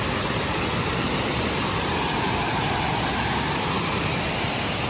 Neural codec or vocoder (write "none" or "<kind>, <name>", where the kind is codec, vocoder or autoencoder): none